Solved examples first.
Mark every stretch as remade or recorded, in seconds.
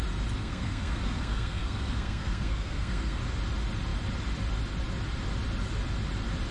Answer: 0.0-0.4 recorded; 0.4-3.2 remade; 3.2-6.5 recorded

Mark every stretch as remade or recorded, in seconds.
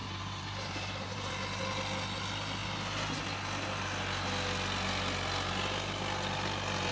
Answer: 0.0-1.3 remade; 1.3-6.9 recorded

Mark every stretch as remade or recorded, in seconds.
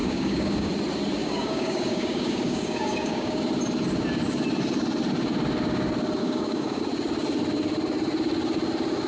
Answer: 0.0-0.7 remade; 0.7-1.2 recorded; 1.2-3.4 remade; 3.4-6.2 recorded; 6.2-6.8 remade; 6.8-9.1 recorded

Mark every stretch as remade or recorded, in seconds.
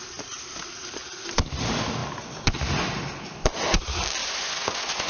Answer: 0.0-4.2 recorded; 4.2-5.1 remade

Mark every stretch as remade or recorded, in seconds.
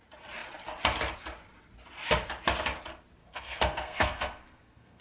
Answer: 0.0-3.2 recorded; 3.2-5.0 remade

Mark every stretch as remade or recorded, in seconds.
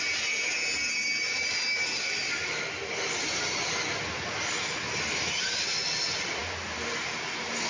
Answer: 0.0-7.7 recorded